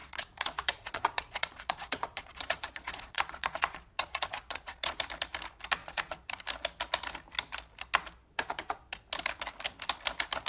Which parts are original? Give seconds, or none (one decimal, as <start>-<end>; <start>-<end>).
5.0-5.8; 6.3-8.3; 8.8-10.5